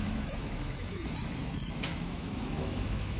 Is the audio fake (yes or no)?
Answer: yes